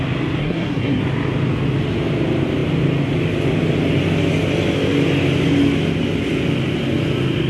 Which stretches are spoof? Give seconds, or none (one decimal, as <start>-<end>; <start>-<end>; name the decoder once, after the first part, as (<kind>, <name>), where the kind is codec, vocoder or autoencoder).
0.4-1.0 (codec, SNAC)